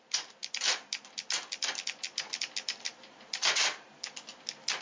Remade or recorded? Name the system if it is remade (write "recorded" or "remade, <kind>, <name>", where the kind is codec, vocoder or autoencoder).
recorded